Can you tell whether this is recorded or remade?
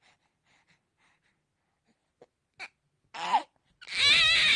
recorded